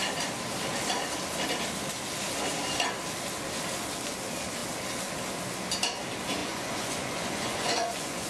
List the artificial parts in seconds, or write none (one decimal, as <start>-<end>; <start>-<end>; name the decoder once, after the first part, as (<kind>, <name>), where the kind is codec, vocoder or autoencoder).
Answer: 6.4-8.3 (vocoder, Vocos)